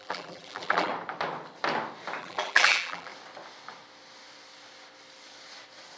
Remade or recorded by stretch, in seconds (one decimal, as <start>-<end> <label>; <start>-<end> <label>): 0.0-0.9 remade; 0.9-2.2 recorded; 2.2-3.1 remade; 3.1-6.0 recorded